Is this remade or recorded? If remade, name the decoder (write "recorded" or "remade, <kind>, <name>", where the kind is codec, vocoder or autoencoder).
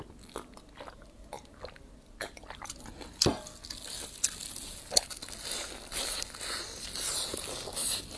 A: recorded